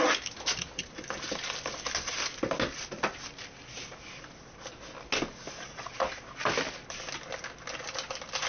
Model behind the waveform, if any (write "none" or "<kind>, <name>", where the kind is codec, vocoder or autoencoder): none